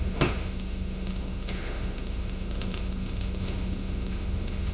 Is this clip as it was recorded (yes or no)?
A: no